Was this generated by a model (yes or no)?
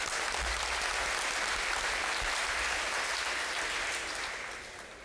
no